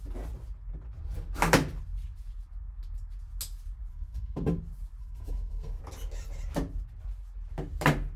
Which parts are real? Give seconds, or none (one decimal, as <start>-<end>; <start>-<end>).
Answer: 0.0-3.9; 4.6-5.0; 5.8-8.2